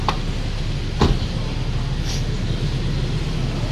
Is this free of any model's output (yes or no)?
yes